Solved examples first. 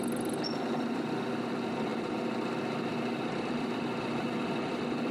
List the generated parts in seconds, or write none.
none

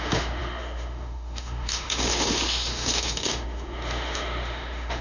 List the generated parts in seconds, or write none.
0.0-5.0

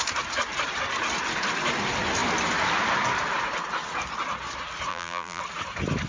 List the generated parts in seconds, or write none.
4.9-5.4

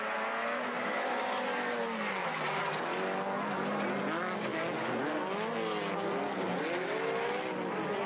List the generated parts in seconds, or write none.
none

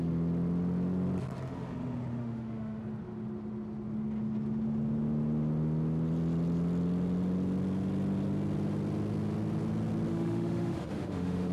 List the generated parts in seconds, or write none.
2.2-2.8; 10.1-11.5

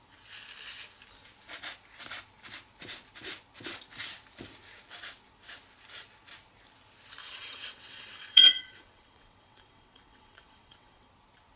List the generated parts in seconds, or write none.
7.2-11.1

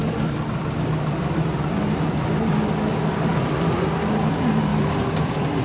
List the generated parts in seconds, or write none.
0.0-2.5; 3.3-4.3; 4.7-5.6